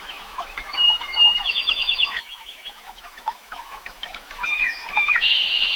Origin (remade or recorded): remade